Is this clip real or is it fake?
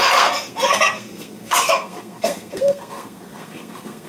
fake